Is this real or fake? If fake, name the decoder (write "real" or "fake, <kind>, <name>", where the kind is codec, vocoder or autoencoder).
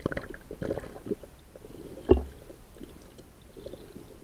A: real